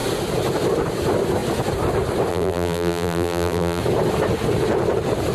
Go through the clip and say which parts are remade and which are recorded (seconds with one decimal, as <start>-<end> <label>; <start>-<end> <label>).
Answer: 0.0-2.3 recorded; 2.3-3.8 remade; 3.8-5.3 recorded